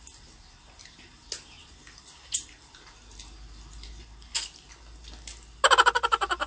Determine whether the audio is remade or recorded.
recorded